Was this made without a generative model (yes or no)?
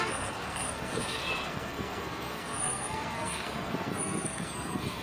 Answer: no